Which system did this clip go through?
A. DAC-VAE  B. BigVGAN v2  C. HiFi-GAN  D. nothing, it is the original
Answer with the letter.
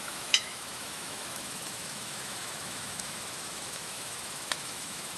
A